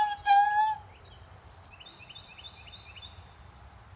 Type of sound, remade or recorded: recorded